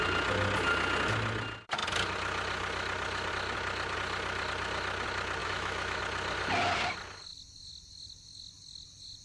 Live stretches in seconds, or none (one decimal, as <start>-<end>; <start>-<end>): 0.0-5.4; 6.0-9.2